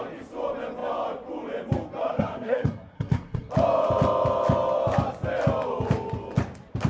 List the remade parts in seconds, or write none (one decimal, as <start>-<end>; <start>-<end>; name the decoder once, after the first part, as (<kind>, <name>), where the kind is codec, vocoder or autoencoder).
2.0-3.5 (codec, SNAC)

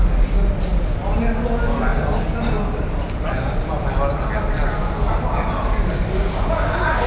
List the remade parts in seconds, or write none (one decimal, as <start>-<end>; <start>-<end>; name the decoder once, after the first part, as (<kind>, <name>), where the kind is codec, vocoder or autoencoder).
none

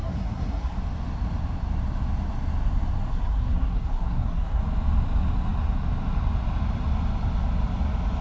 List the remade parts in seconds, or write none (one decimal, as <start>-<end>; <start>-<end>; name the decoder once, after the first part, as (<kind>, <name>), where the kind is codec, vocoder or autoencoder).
0.0-0.8 (codec, SNAC); 3.1-4.6